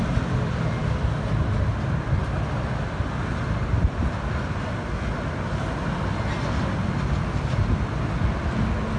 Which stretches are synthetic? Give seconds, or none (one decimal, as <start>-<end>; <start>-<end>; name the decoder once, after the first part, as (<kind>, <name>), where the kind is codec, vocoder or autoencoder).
none